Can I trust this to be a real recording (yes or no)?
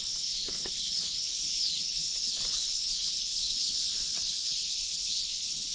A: no